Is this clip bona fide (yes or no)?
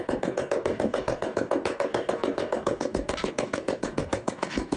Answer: no